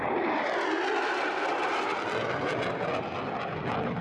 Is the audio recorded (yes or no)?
yes